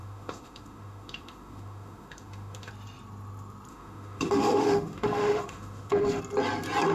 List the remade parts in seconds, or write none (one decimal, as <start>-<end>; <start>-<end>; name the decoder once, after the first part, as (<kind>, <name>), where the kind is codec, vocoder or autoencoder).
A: 0.0-2.7 (autoencoder, DAC-VAE); 3.7-6.2